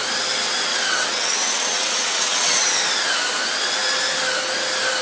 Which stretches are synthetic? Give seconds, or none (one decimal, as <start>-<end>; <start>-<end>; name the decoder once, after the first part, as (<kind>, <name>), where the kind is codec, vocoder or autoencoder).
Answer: 0.7-2.6 (vocoder, WaveNeXt)